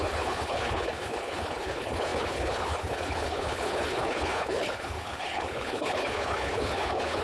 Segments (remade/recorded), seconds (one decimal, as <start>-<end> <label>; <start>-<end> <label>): 0.0-7.2 remade